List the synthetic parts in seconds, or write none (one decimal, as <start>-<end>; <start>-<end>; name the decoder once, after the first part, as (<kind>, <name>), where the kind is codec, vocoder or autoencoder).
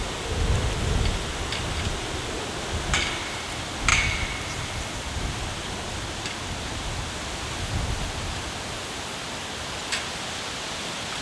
none